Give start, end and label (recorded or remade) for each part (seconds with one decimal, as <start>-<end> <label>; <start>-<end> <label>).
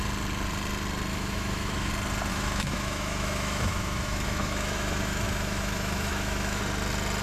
0.0-1.1 recorded; 1.1-1.9 remade; 1.9-2.3 recorded; 2.3-6.6 remade; 6.6-7.2 recorded